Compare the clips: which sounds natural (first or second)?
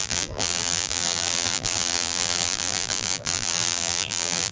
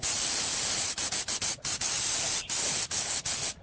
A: second